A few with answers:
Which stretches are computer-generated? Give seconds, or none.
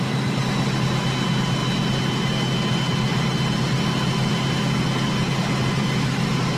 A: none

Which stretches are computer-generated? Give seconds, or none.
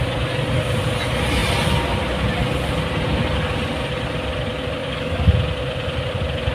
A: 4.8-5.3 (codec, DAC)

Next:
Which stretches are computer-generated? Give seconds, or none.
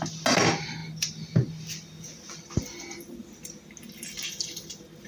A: none